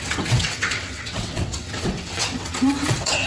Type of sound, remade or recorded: remade